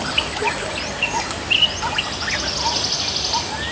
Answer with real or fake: real